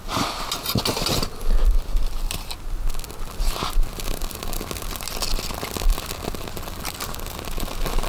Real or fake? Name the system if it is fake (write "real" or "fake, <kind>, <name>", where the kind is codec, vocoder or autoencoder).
real